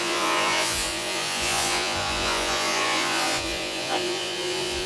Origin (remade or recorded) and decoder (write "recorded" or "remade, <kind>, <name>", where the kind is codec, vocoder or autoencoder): remade, vocoder, Vocos